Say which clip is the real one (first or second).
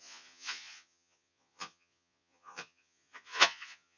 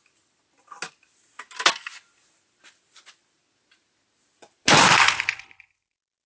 second